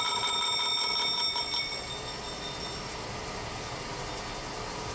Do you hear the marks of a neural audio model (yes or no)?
no